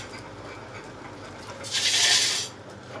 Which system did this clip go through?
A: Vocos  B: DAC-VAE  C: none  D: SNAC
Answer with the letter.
C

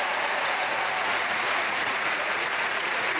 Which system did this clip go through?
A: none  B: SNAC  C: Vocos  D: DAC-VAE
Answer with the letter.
C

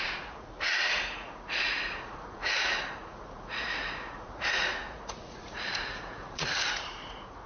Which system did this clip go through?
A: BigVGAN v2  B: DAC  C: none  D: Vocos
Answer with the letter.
D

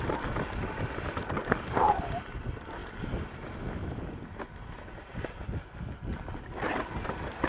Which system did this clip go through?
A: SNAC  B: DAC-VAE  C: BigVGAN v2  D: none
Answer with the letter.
D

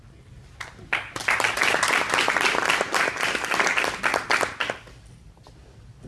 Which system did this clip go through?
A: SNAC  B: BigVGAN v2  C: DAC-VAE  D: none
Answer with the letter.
D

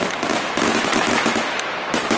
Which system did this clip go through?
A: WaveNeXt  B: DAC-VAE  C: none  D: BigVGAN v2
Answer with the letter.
C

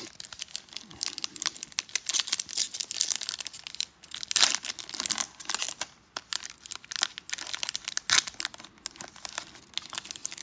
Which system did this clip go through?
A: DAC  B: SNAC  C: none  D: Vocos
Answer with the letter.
C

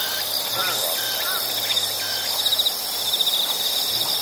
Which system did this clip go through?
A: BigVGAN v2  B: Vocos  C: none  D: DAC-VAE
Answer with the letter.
C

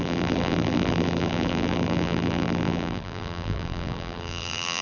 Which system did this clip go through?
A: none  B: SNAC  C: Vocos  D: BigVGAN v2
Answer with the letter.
D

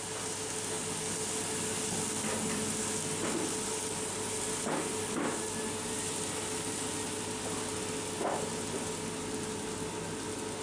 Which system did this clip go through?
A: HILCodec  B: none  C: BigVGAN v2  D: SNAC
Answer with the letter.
B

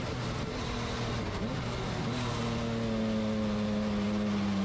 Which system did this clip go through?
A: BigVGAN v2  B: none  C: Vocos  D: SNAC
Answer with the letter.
B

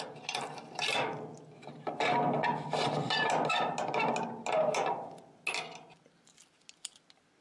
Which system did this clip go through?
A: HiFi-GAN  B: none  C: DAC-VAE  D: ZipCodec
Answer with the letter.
B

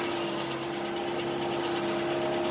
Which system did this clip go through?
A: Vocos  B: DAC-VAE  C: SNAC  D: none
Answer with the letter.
D